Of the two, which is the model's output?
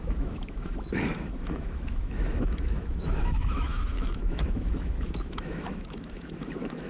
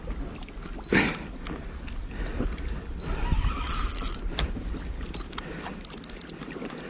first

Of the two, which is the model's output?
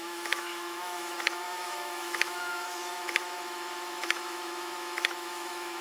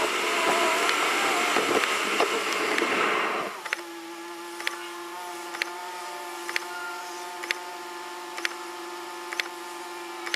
first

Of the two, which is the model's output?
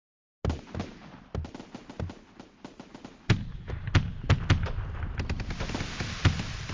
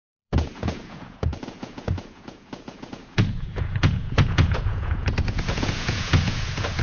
second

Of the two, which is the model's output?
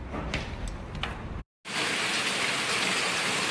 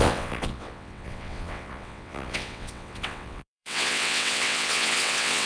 second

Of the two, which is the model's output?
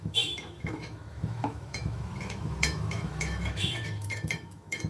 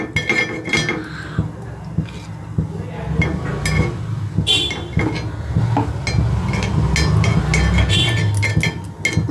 first